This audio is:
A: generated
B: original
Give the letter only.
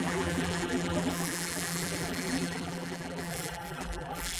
A